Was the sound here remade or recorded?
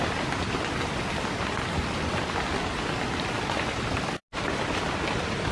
recorded